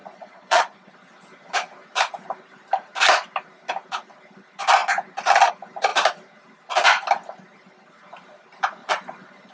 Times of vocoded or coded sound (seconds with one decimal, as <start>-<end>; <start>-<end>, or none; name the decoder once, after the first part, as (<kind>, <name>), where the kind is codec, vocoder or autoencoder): 0.0-0.9 (vocoder, Vocos); 8.8-9.5